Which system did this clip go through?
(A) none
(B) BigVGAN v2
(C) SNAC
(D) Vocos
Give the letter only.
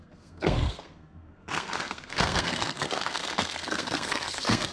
C